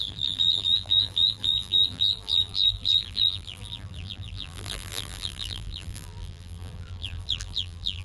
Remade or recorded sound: remade